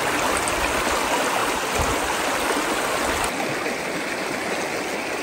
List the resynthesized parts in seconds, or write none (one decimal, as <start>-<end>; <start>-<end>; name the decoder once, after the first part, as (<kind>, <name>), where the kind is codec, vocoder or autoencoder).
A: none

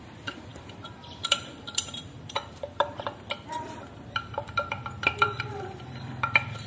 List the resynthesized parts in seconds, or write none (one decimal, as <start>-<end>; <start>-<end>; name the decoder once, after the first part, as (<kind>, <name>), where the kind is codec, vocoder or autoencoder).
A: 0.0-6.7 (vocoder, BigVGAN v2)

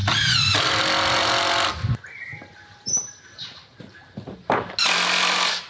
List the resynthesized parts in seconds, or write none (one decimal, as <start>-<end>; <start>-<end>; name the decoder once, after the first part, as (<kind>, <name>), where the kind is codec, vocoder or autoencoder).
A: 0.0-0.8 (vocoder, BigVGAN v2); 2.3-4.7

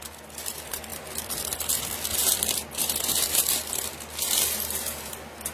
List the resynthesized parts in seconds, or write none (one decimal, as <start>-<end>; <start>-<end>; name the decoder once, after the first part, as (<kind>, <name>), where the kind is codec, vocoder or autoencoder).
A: 0.9-1.8 (vocoder, BigVGAN v2); 2.2-5.0

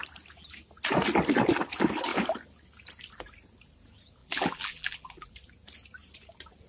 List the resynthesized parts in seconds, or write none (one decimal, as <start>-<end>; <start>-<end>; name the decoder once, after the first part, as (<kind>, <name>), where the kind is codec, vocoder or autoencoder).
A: 4.2-5.3 (vocoder, BigVGAN v2)

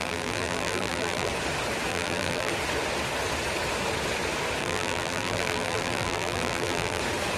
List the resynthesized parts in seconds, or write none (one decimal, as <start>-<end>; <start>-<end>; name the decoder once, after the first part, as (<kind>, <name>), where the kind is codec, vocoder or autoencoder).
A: 0.0-1.3 (vocoder, BigVGAN v2); 1.9-2.5; 4.6-7.0

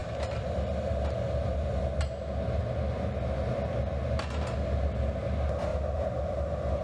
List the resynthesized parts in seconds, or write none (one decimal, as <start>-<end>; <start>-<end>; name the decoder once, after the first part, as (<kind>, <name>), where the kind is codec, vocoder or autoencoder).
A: 0.0-2.0 (vocoder, BigVGAN v2); 5.7-6.8